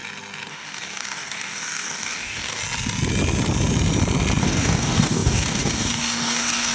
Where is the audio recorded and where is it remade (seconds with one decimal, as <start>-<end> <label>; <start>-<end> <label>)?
0.0-0.5 recorded; 0.5-2.6 remade; 2.6-4.4 recorded; 4.4-6.7 remade